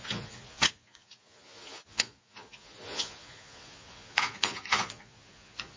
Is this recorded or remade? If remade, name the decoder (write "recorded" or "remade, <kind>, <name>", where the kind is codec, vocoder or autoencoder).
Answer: remade, vocoder, Vocos